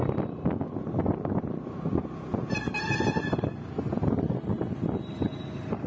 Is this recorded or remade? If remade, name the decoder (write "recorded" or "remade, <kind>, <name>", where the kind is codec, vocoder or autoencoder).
recorded